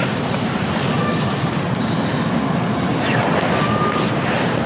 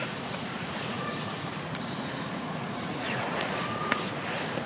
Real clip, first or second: first